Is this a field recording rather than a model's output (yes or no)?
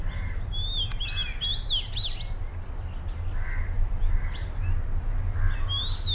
yes